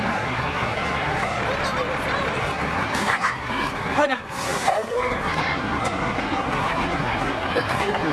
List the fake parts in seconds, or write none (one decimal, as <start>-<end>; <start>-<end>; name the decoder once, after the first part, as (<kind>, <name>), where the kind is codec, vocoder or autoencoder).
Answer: 0.0-1.4 (codec, SNAC); 2.4-8.1